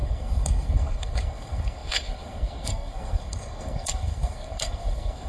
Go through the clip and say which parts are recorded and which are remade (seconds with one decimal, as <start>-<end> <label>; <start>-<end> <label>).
0.0-5.3 remade